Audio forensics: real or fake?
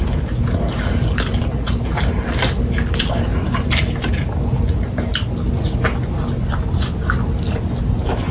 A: real